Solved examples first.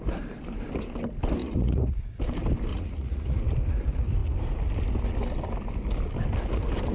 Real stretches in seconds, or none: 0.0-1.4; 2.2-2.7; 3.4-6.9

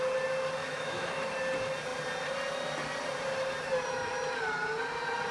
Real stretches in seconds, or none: 0.0-0.6; 1.3-5.3

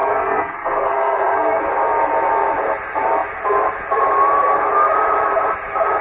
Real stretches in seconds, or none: 1.6-6.0

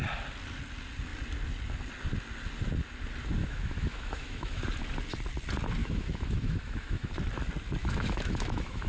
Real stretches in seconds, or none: 0.0-3.4; 4.6-5.8; 7.1-7.8